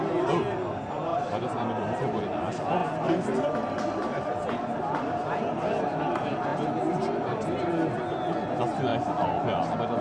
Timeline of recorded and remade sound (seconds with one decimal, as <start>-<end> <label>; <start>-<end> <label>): 0.0-1.1 recorded; 1.1-2.2 remade; 2.2-10.0 recorded